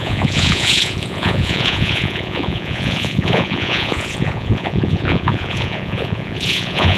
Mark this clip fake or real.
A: fake